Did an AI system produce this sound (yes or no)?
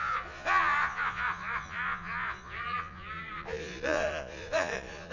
yes